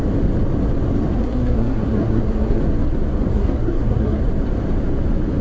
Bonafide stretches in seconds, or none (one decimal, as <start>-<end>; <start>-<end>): 0.0-1.1; 2.6-3.3; 4.2-5.4